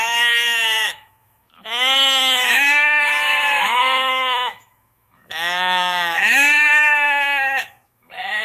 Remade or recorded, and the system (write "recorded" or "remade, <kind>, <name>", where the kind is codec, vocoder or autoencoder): remade, autoencoder, DAC-VAE